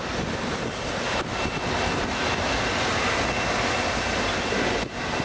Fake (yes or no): no